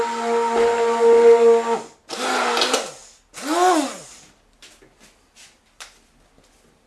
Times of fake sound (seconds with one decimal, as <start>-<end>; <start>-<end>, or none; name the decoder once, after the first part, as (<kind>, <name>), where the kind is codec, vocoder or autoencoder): none